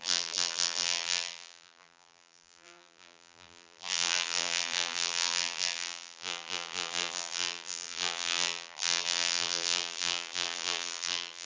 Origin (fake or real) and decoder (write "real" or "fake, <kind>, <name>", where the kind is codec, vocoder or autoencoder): fake, vocoder, BigVGAN v2